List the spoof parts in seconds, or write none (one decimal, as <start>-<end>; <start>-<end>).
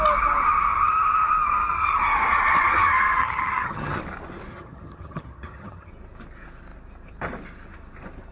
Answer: 3.2-4.0; 4.5-5.9